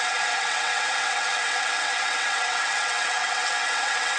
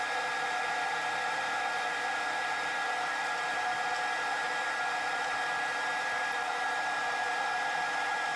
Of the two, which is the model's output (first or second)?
first